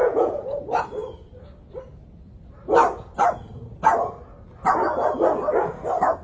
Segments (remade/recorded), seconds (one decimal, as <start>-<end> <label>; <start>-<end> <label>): 0.0-0.6 remade; 0.6-6.2 recorded